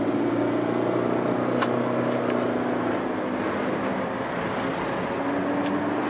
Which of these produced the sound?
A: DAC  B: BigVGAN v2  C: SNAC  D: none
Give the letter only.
D